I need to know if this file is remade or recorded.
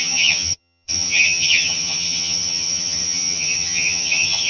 remade